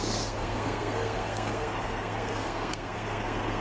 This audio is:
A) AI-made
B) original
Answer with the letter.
A